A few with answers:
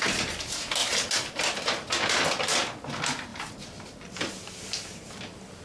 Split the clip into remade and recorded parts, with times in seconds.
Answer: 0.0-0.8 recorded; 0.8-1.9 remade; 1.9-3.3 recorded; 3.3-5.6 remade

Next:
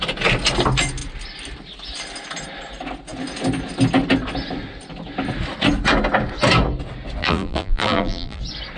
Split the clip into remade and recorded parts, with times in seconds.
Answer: 0.0-7.2 recorded; 7.2-8.4 remade; 8.4-8.8 recorded

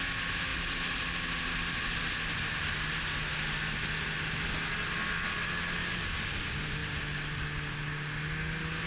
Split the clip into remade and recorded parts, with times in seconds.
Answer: 0.0-0.5 recorded; 0.5-1.9 remade; 1.9-8.9 recorded

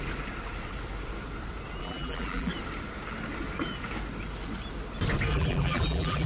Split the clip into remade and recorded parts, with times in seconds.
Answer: 0.0-1.8 recorded; 1.8-2.5 remade; 2.5-5.3 recorded; 5.3-6.3 remade

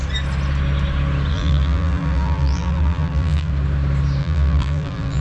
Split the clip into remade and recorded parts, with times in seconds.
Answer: 0.0-1.3 recorded; 1.3-3.5 remade; 3.5-4.2 recorded; 4.2-5.2 remade

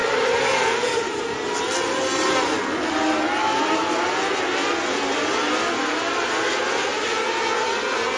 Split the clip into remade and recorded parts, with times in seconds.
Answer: 0.0-1.3 remade; 1.3-8.2 recorded